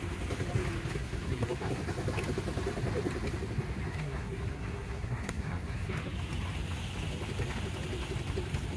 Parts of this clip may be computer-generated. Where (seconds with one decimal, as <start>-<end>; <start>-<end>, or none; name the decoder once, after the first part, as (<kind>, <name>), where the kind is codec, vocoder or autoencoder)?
0.9-1.8 (codec, SNAC); 3.9-5.9